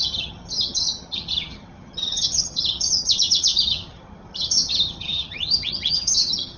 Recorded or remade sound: remade